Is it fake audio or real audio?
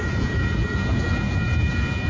fake